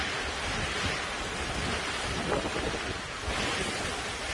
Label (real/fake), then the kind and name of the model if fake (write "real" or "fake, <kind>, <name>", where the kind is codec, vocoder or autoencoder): real